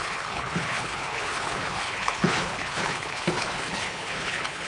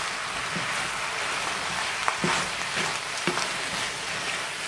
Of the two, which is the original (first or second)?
second